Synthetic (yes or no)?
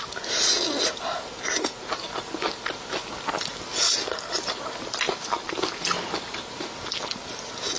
no